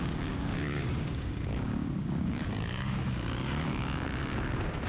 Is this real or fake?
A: fake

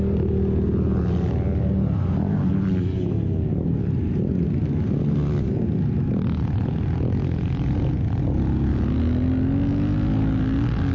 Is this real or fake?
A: real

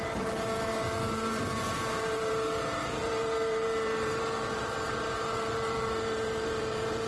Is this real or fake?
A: fake